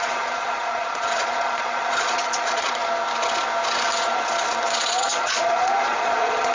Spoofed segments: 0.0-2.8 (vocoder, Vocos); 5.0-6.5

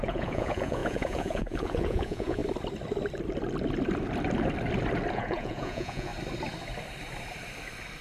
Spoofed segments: 0.0-2.4 (vocoder, Vocos); 5.1-6.1

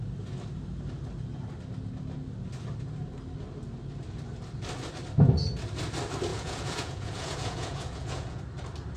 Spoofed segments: 6.3-8.4 (vocoder, Vocos)

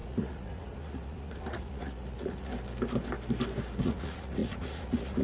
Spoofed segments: 0.0-2.5 (vocoder, Vocos); 3.8-5.2

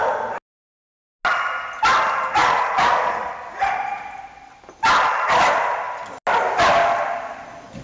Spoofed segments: 2.4-3.2 (vocoder, Vocos)